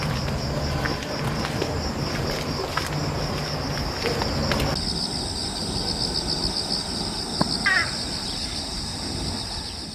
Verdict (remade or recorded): recorded